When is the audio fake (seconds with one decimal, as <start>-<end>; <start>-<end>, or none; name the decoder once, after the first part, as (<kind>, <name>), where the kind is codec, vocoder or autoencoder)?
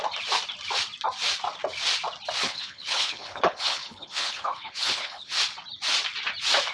2.4-5.4 (codec, HILCodec)